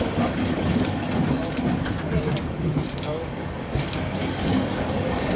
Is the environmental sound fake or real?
fake